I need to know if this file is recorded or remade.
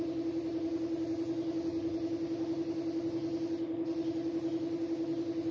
recorded